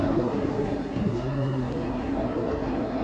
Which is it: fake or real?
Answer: fake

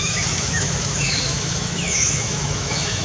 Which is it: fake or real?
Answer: fake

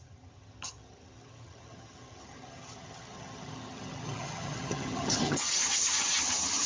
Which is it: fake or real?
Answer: fake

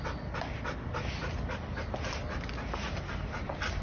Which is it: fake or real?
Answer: real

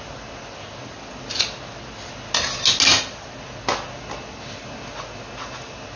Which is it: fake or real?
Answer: real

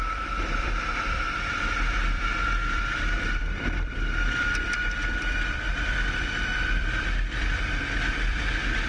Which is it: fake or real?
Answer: fake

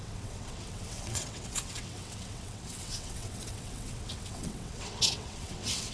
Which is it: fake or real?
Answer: fake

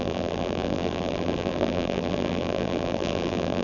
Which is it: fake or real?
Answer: fake